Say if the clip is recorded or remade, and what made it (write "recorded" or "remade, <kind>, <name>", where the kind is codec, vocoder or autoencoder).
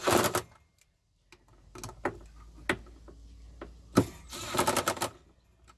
recorded